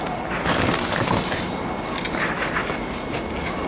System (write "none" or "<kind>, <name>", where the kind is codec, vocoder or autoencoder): none